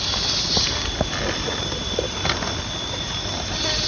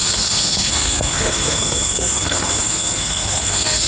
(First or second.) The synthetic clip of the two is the second